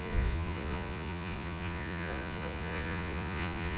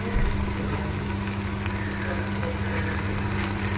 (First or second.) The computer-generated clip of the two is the first